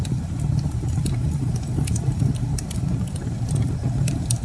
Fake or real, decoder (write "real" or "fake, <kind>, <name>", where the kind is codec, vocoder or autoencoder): fake, vocoder, BigVGAN v2